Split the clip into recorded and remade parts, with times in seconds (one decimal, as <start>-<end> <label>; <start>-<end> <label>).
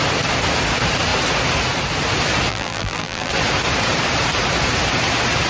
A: 0.0-2.5 recorded; 2.5-3.3 remade; 3.3-5.5 recorded